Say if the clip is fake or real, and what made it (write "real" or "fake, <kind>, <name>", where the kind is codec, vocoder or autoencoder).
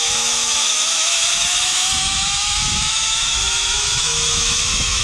fake, autoencoder, DAC-VAE